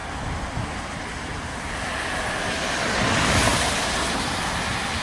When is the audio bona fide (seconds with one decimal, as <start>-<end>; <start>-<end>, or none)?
1.7-3.5; 4.2-5.0